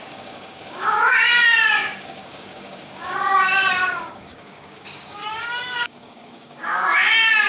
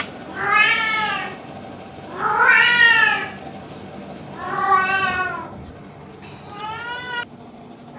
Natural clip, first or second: second